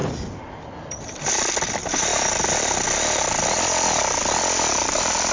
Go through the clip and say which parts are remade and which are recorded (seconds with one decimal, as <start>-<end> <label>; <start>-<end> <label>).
0.0-5.3 recorded